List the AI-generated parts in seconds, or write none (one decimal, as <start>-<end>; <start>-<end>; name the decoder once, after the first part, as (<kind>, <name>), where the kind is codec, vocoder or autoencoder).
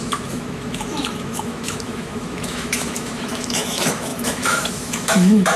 0.0-5.6 (autoencoder, DAC-VAE)